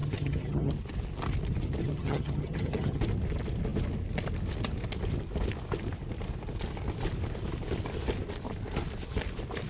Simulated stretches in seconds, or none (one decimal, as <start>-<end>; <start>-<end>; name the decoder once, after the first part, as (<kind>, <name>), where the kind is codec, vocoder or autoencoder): 0.0-0.7 (vocoder, HiFi-GAN); 1.8-3.0